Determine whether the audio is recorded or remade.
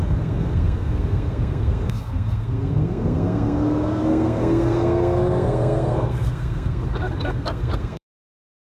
remade